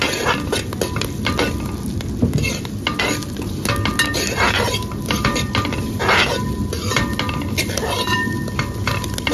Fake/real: real